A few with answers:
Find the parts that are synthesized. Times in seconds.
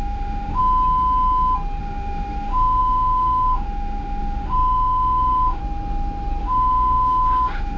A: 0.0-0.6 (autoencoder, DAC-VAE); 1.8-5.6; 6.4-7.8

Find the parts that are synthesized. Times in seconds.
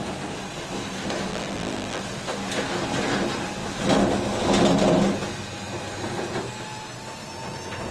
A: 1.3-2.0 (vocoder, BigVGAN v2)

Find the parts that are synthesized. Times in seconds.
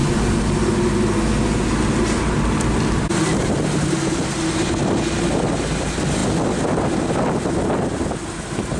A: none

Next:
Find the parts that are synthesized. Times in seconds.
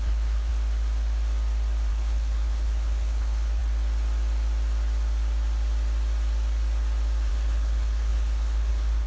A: 0.0-0.5 (codec, HILCodec); 1.9-3.6; 7.3-9.1